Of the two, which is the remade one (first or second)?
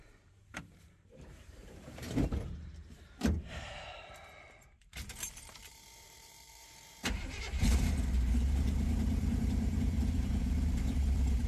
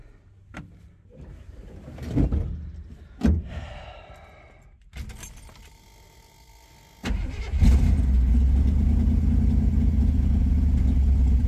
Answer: first